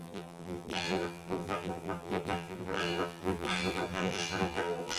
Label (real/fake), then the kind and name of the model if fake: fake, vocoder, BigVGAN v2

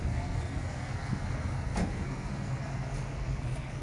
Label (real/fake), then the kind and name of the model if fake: fake, codec, SNAC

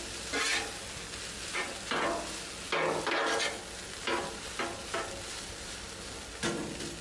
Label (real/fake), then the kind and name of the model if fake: real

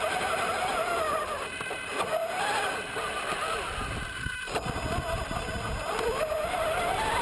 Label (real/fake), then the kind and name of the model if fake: real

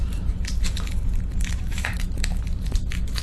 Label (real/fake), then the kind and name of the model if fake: fake, vocoder, BigVGAN v2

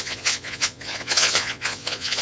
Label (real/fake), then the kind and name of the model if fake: fake, vocoder, Vocos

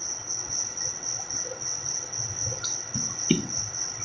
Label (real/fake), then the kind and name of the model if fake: fake, vocoder, WaveNeXt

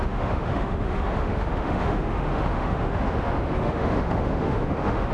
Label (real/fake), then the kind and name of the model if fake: fake, autoencoder, DAC-VAE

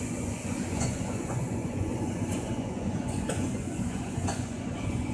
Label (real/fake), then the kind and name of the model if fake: fake, vocoder, Vocos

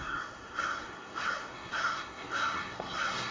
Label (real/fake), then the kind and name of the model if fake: fake, codec, SNAC